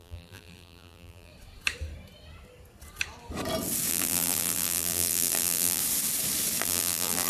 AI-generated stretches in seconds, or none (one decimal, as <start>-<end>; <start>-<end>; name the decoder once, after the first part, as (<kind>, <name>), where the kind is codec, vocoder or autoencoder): 0.0-1.3 (vocoder, BigVGAN v2); 3.9-5.8; 6.6-7.3